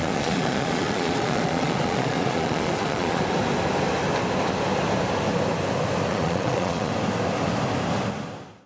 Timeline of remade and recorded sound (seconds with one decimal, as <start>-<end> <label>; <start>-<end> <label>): 0.0-3.2 remade; 3.2-6.1 recorded; 6.1-6.9 remade; 6.9-8.7 recorded